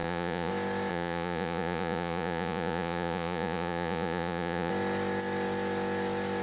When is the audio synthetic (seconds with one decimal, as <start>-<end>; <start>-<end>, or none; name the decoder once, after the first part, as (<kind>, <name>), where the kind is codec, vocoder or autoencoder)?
0.0-0.5 (vocoder, Vocos); 0.9-4.7